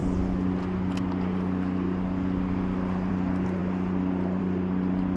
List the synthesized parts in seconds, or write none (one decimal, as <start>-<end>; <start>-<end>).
none